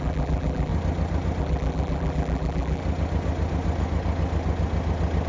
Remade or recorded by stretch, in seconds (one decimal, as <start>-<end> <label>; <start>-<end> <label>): 0.0-0.7 remade; 0.7-1.4 recorded; 1.4-2.8 remade; 2.8-5.3 recorded